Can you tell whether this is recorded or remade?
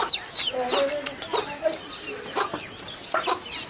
recorded